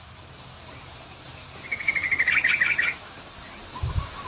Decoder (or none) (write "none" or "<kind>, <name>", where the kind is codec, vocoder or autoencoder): none